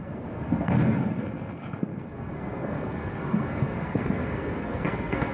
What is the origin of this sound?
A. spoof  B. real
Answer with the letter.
A